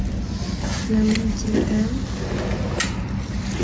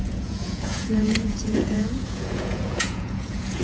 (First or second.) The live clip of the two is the first